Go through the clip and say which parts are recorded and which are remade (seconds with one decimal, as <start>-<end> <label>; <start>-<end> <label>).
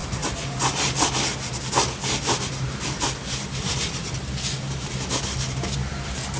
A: 0.0-6.4 recorded